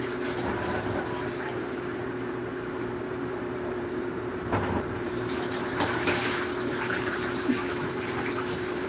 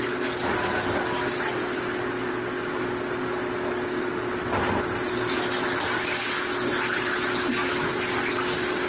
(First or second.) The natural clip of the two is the second